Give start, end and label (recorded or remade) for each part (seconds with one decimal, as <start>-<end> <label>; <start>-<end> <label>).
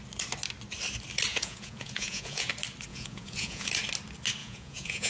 0.0-1.3 recorded; 1.3-2.5 remade; 2.5-2.9 recorded; 2.9-3.7 remade; 3.7-4.4 recorded; 4.4-5.1 remade